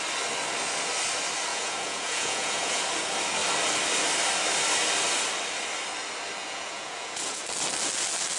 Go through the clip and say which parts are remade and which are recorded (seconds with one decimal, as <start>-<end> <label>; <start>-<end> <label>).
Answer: 0.0-1.5 recorded; 1.5-2.8 remade; 2.8-6.4 recorded; 6.4-7.4 remade; 7.4-8.4 recorded

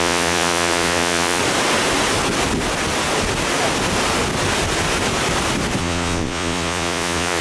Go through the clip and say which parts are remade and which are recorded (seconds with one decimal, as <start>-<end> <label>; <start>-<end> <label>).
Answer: 0.0-1.4 remade; 1.4-5.8 recorded; 5.8-7.4 remade

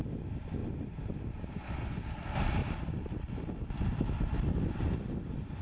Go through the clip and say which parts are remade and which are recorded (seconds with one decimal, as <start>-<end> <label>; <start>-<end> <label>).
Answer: 0.0-0.6 recorded; 0.6-1.6 remade; 1.6-2.6 recorded; 2.6-3.2 remade; 3.2-5.6 recorded